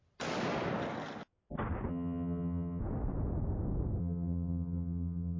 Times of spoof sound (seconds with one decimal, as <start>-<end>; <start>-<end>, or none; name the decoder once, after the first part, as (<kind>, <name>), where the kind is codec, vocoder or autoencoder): 1.9-2.8 (vocoder, HiFi-GAN); 4.0-5.4